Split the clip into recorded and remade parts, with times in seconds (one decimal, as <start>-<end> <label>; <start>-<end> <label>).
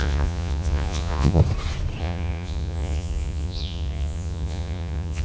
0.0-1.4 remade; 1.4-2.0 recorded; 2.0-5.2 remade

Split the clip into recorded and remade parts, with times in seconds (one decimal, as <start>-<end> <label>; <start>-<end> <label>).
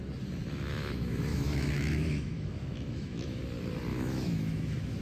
0.0-0.4 recorded; 0.4-3.4 remade; 3.4-3.9 recorded; 3.9-5.0 remade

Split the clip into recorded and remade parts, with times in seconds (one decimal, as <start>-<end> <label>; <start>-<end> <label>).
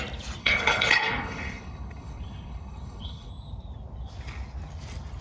0.0-0.4 recorded; 0.4-3.3 remade; 3.3-5.2 recorded